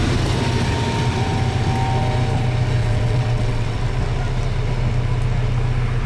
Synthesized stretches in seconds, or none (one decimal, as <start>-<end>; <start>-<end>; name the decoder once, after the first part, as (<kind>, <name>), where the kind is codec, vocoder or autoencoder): 2.8-3.8 (vocoder, WaveNeXt)

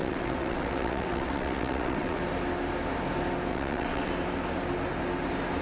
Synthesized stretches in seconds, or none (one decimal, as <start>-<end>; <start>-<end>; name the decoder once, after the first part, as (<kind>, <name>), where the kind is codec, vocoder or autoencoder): 0.0-2.2 (vocoder, WaveNeXt); 3.5-4.1

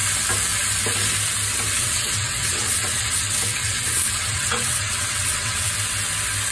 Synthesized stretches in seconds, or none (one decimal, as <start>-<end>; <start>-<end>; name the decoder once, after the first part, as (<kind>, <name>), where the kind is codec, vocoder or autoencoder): 1.8-5.7 (vocoder, WaveNeXt)

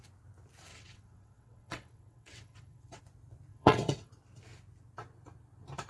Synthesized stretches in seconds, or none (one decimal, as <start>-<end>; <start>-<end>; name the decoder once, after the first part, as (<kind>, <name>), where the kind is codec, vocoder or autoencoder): 0.7-3.0 (vocoder, WaveNeXt); 3.5-4.1

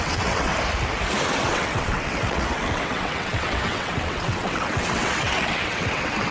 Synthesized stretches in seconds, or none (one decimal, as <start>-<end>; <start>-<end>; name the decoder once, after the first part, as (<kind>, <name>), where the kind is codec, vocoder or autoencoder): 0.0-0.5 (vocoder, WaveNeXt); 1.3-6.3

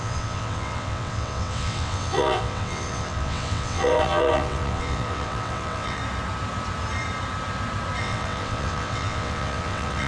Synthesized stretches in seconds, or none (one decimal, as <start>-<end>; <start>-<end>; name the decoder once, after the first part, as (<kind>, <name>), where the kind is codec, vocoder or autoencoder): 0.0-6.0 (vocoder, WaveNeXt); 8.0-10.1

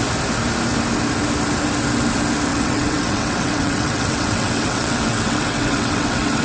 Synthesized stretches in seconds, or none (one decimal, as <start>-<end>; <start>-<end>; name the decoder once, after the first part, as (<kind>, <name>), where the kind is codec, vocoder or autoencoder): 2.5-6.4 (vocoder, WaveNeXt)